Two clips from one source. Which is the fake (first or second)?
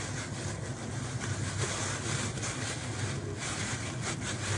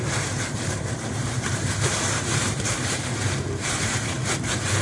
second